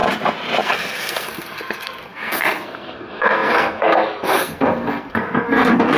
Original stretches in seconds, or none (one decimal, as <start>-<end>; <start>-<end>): 0.0-0.6

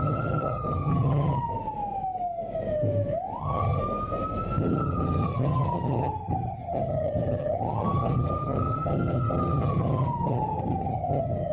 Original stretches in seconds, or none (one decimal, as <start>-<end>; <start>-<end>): 1.5-3.4; 3.8-4.6

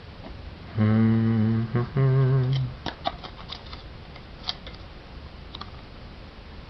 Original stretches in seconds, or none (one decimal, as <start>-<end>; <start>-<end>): 0.0-6.7

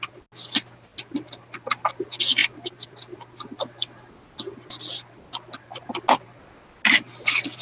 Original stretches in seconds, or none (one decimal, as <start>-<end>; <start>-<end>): 0.0-7.6

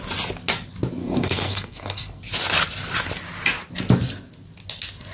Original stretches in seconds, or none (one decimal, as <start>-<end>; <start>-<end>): 0.0-1.0; 2.2-5.1